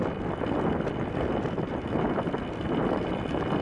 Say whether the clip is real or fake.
real